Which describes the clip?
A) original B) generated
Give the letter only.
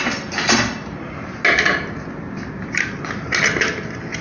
A